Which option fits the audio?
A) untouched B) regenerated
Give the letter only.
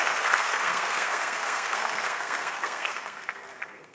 B